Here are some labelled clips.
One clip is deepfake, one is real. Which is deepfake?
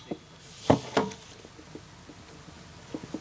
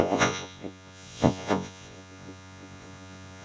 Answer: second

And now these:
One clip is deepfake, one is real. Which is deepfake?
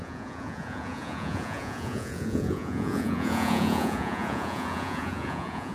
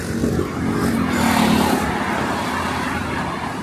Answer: first